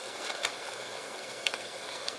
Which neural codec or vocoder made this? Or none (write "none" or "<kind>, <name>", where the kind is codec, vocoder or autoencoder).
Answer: codec, SNAC